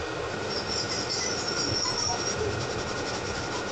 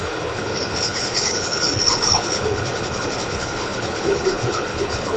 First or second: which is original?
first